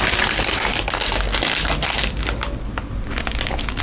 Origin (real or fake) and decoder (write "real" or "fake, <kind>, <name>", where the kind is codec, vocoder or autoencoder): real